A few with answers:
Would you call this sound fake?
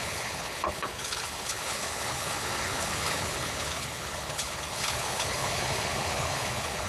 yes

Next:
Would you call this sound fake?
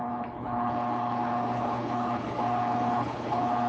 yes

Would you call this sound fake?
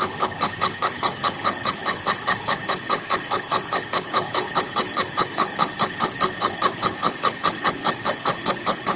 yes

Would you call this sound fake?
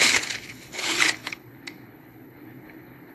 yes